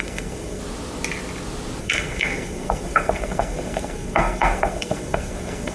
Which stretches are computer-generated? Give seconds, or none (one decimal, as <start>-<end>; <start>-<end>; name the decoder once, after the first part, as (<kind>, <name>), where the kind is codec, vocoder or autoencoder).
0.0-0.6 (codec, SNAC); 1.8-5.7